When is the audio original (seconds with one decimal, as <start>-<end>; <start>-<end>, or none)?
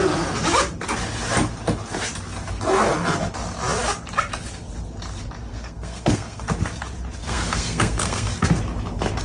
0.0-5.5; 6.4-7.2; 8.6-9.2